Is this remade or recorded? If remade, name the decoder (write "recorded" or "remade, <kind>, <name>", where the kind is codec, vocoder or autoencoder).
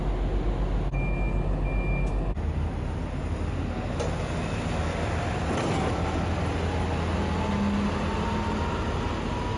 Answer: recorded